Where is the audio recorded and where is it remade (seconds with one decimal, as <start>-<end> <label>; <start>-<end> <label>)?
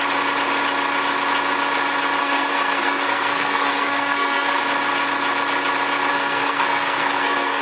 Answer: 0.0-2.2 recorded; 2.2-4.6 remade; 4.6-6.1 recorded; 6.1-7.6 remade